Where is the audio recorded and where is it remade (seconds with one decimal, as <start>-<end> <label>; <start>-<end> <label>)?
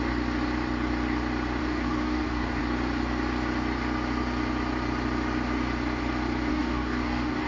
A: 0.0-1.6 recorded; 1.6-2.6 remade; 2.6-6.5 recorded; 6.5-7.5 remade